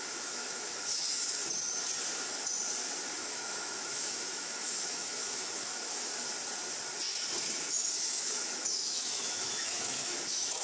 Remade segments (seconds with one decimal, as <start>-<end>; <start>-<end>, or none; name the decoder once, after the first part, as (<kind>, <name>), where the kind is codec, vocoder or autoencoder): 0.0-1.4 (autoencoder, DAC-VAE); 3.2-6.1; 7.7-10.6